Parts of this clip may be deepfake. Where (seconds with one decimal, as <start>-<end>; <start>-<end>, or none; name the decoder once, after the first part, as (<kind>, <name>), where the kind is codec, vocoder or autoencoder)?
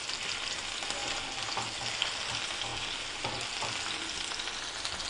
none